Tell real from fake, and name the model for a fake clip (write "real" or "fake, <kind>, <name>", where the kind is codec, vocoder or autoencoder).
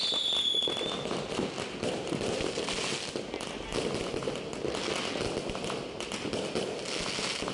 real